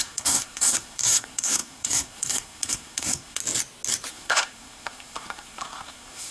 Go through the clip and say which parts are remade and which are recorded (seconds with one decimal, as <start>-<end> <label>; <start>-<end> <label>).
0.0-3.4 remade; 3.4-4.1 recorded; 4.1-6.3 remade